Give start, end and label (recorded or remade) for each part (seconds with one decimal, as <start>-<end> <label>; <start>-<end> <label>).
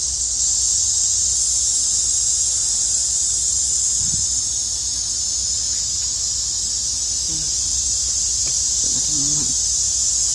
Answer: 0.0-10.3 recorded